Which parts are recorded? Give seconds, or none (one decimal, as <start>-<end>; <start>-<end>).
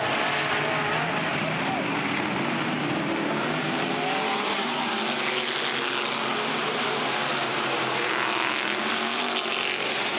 0.0-1.3; 4.9-7.5; 8.1-10.2